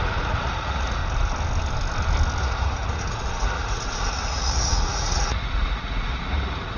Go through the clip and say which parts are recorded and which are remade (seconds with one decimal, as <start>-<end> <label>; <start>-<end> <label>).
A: 0.0-1.0 remade; 1.0-2.4 recorded; 2.4-6.8 remade